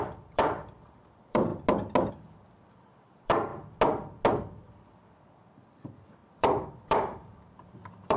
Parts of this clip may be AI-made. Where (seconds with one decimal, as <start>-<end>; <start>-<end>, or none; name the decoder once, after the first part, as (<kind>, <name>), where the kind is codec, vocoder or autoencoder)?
0.0-1.5 (vocoder, BigVGAN v2); 2.1-3.5; 4.3-8.2